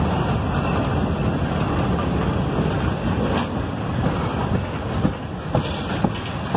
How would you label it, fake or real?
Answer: real